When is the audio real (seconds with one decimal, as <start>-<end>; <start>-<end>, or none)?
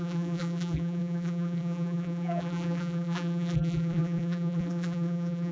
none